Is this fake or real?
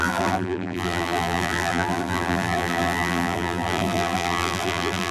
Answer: fake